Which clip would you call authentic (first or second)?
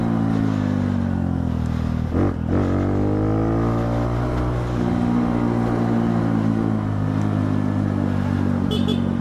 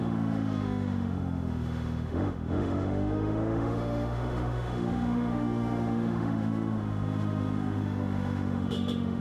first